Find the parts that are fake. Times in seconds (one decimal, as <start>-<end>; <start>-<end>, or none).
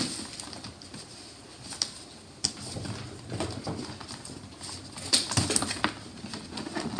none